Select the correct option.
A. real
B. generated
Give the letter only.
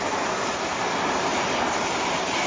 A